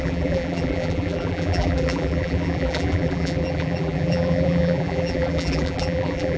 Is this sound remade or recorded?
remade